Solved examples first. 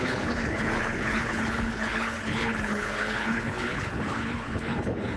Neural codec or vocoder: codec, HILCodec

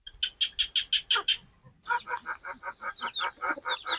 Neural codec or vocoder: none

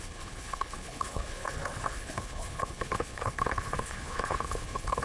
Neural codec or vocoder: codec, HILCodec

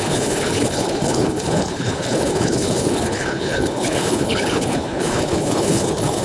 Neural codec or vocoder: codec, HILCodec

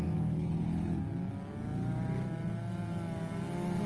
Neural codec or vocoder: none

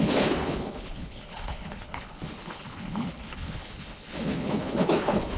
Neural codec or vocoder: codec, HILCodec